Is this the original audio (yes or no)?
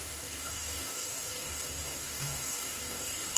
no